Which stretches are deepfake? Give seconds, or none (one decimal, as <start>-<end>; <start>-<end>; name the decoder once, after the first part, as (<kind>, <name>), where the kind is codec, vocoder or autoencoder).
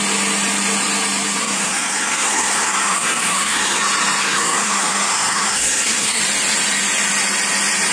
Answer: 1.4-3.8 (codec, SNAC); 4.2-6.2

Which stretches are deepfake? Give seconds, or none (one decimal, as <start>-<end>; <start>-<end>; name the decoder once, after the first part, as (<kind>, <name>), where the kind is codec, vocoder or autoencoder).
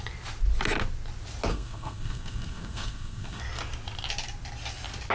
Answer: 1.5-3.4 (codec, SNAC)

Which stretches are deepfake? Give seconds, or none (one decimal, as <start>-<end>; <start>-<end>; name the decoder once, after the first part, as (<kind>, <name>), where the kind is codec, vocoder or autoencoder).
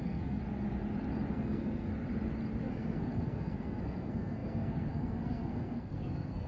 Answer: 0.0-0.4 (codec, SNAC); 1.3-1.9; 2.6-6.5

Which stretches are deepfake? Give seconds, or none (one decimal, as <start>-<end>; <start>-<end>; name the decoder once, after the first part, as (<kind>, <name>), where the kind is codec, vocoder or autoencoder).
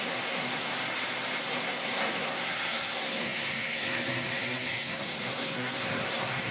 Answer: 0.0-0.8 (codec, SNAC); 1.4-6.5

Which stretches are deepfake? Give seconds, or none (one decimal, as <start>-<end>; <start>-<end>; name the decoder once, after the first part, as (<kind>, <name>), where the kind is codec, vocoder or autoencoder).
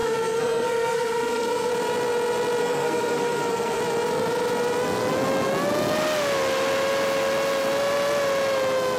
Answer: 0.0-1.7 (codec, SNAC); 2.6-3.8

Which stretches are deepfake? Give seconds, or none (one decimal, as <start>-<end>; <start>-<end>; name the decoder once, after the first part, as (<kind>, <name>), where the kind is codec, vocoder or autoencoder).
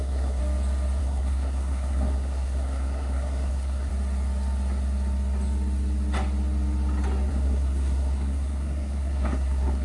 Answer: 0.0-0.4 (codec, SNAC); 1.0-3.9; 7.3-9.8